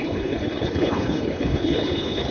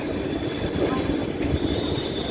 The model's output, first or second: first